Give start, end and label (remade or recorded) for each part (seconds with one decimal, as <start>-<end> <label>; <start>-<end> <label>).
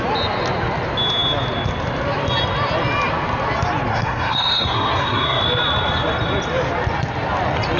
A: 0.0-3.9 recorded; 3.9-5.4 remade; 5.4-7.8 recorded